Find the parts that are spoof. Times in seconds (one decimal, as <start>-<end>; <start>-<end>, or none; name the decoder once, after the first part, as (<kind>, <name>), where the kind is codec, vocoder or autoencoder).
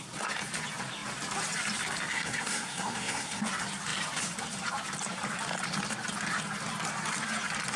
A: 2.1-3.4 (codec, SNAC)